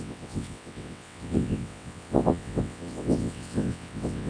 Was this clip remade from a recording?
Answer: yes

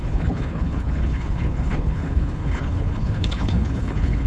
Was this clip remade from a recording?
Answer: yes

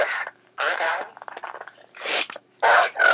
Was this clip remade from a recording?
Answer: yes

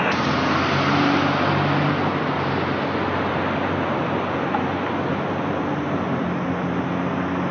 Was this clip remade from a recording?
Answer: no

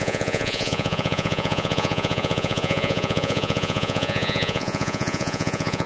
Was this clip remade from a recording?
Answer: yes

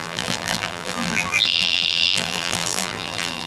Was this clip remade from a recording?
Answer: yes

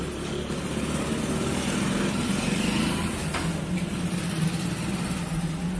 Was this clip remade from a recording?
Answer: no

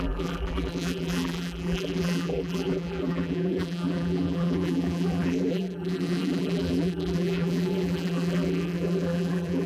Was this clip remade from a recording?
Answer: yes